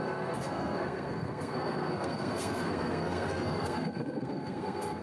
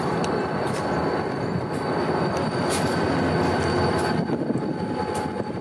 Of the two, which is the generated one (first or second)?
first